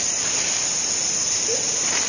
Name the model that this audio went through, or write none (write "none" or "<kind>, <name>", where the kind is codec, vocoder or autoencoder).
vocoder, BigVGAN v2